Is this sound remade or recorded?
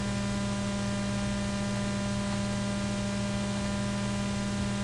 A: recorded